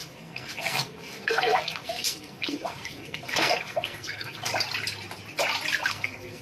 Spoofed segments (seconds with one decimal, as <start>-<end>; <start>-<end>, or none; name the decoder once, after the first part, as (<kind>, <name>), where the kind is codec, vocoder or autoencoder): 0.0-4.5 (codec, SNAC); 5.9-6.4